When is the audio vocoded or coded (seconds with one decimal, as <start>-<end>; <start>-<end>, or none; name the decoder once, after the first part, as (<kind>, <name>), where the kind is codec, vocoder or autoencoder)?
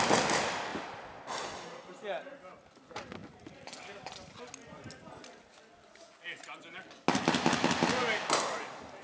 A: none